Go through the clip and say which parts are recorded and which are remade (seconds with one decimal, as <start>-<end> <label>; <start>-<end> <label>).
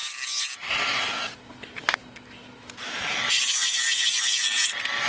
0.0-5.1 recorded